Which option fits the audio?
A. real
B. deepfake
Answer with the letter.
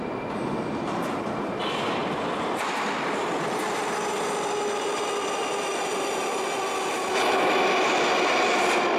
A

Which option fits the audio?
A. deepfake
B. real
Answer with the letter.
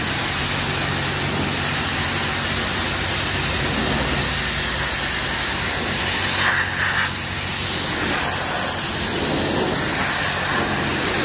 B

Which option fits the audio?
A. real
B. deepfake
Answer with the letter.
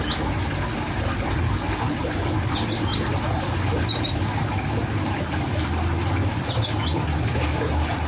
A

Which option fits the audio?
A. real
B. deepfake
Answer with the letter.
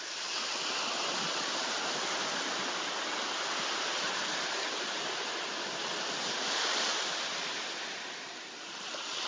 A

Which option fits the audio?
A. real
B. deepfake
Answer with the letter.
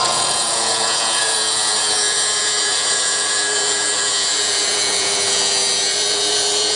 B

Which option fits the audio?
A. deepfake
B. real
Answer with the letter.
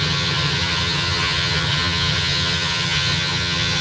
A